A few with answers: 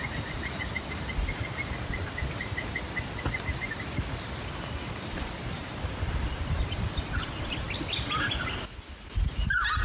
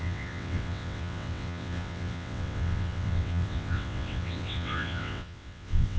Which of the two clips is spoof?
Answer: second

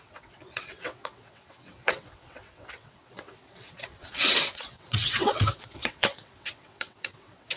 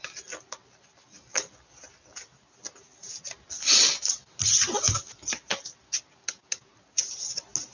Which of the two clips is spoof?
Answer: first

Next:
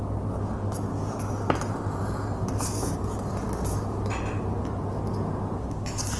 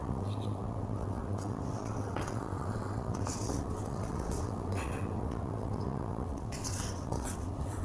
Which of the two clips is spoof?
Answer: second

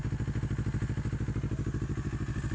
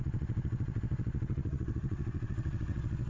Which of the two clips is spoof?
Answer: second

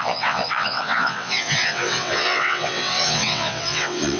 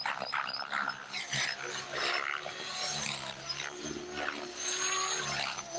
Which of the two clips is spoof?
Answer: first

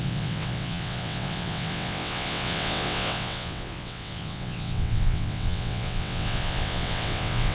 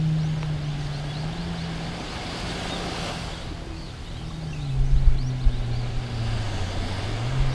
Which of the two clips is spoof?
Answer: first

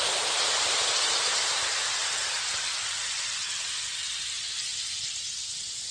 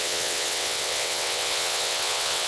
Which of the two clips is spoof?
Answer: second